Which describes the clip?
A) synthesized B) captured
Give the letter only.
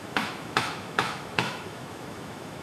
A